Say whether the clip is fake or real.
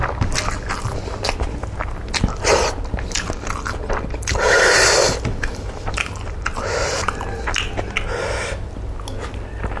real